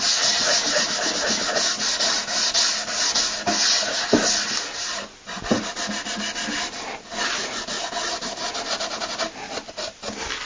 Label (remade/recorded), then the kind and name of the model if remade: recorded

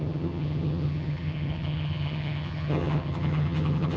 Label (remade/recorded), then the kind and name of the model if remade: remade, vocoder, HiFi-GAN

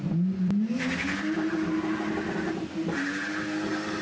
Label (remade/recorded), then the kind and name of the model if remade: recorded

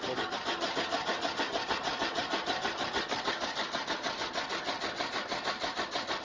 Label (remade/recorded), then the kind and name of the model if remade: recorded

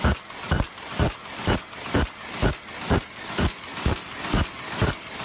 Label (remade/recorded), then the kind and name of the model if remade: recorded